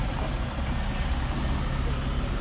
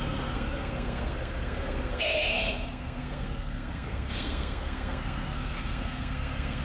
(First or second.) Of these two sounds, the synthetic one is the second